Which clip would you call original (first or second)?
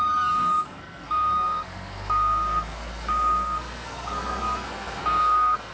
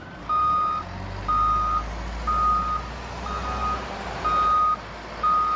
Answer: second